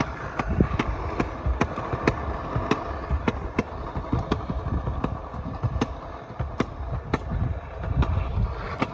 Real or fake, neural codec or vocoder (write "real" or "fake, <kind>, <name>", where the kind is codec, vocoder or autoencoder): real